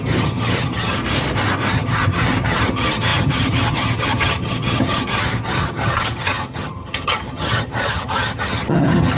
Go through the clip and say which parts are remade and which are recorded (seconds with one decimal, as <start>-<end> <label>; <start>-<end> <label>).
0.0-1.0 remade; 1.0-1.7 recorded; 1.7-9.2 remade